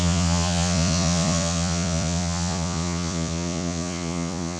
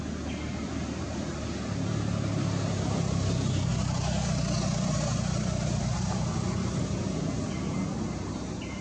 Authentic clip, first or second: second